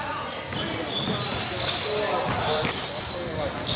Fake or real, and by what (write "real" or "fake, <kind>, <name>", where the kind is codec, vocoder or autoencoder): real